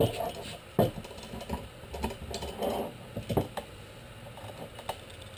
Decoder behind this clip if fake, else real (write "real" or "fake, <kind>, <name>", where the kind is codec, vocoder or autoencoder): real